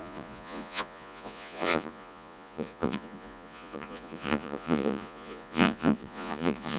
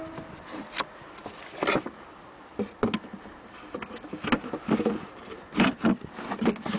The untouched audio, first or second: second